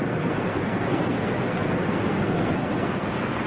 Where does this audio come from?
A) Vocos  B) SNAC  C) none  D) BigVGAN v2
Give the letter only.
B